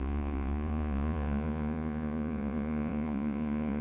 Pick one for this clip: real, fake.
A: fake